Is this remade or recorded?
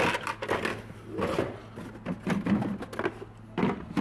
recorded